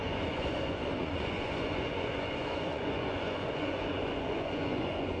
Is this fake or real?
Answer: fake